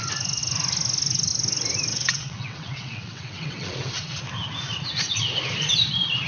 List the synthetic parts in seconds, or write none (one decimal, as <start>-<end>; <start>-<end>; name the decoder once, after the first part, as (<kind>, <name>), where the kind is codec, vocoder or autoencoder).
1.9-4.2 (vocoder, WaveNeXt)